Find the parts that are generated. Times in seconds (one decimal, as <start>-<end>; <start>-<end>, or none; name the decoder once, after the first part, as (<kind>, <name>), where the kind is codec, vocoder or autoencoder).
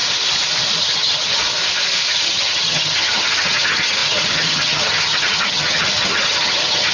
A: 0.8-1.4 (vocoder, HiFi-GAN); 2.1-6.9